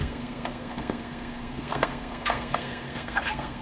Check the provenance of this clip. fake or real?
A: fake